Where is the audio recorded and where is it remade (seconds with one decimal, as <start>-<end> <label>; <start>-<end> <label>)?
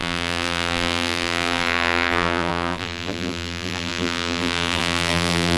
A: 0.0-5.6 remade